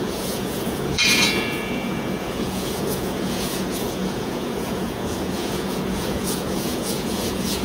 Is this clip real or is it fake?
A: fake